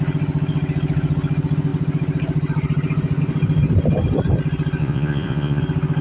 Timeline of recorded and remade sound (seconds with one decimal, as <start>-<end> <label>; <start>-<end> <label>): 0.0-4.8 recorded; 4.8-5.6 remade; 5.6-6.0 recorded